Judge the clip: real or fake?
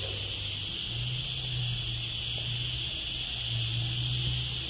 real